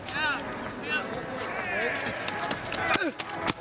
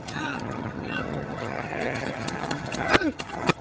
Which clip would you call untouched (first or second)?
first